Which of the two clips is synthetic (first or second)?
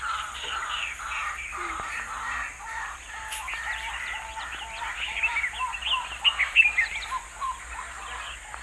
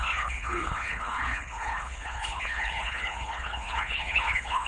second